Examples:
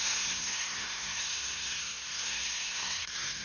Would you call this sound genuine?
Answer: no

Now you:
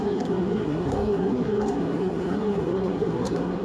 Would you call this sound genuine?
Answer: no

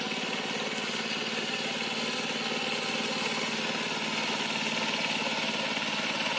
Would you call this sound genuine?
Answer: yes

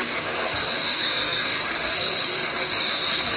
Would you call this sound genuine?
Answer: no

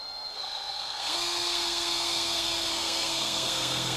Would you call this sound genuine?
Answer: no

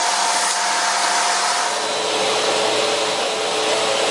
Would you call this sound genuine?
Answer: yes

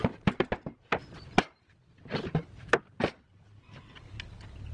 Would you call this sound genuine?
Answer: yes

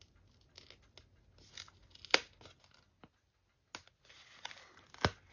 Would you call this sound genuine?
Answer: yes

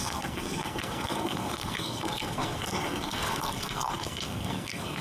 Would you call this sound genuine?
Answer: no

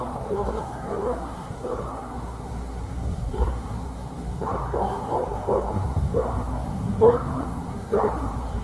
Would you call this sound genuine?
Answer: no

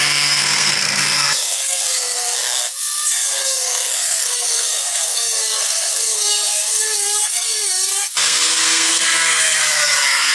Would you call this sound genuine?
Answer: no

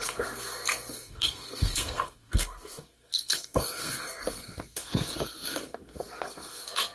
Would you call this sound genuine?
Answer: no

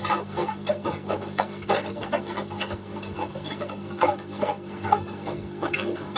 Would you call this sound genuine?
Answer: no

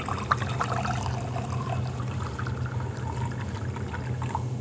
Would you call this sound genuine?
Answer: yes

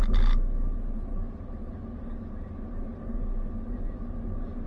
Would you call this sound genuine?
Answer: yes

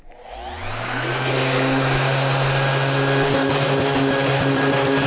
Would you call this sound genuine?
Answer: yes